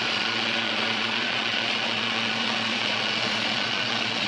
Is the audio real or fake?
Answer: fake